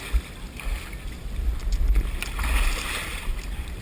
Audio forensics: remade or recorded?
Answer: recorded